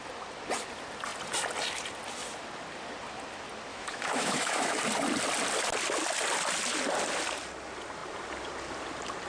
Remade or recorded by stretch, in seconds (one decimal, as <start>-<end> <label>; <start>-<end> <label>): 0.0-3.7 recorded; 3.7-4.8 remade; 4.8-9.3 recorded